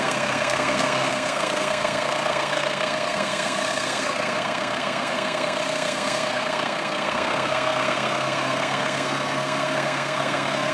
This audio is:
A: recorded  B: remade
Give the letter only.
B